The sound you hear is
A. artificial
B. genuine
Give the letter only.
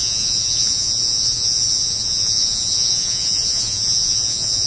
A